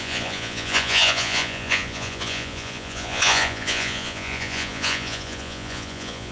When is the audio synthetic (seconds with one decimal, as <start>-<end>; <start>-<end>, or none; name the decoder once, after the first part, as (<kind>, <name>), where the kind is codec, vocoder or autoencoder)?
0.0-6.3 (vocoder, Vocos)